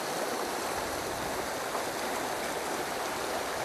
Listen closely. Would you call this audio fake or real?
real